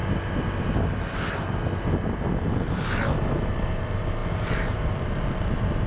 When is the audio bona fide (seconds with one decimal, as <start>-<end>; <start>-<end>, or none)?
0.0-3.5